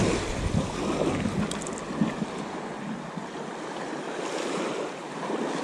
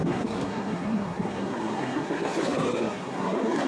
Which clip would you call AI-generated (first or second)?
second